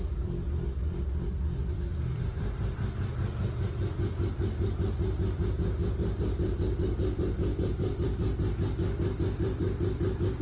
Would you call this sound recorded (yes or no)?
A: no